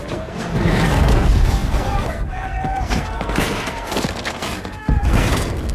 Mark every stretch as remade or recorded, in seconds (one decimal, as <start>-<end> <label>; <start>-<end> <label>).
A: 0.0-5.7 remade